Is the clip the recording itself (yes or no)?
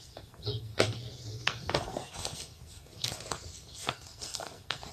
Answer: no